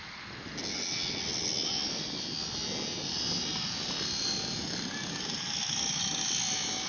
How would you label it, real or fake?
real